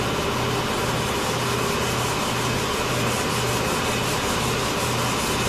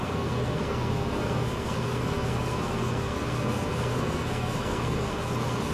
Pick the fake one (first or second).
second